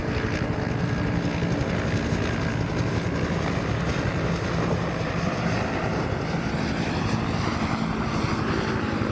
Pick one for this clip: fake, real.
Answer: real